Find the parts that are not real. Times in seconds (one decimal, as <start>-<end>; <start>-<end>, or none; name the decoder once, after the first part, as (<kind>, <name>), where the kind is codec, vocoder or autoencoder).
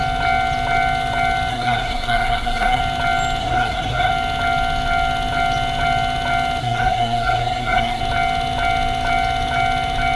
1.5-2.8 (codec, SNAC); 3.4-4.1; 6.6-8.0